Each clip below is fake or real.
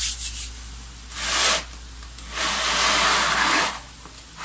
real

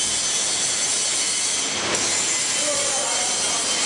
real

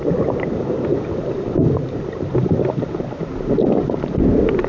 real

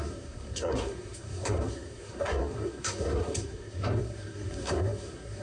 fake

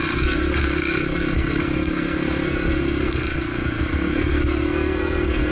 fake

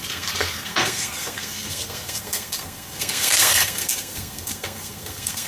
fake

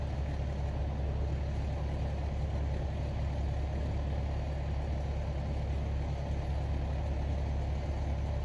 real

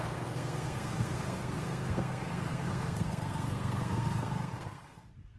fake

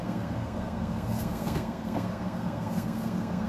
fake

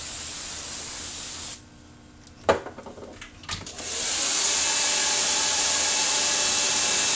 real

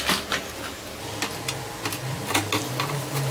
real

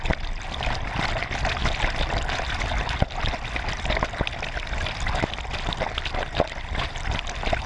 real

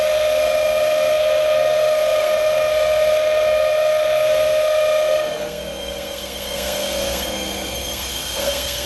fake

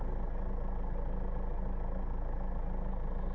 real